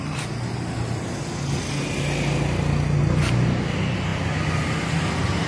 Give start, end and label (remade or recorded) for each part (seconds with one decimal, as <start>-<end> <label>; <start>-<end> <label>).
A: 0.0-5.5 recorded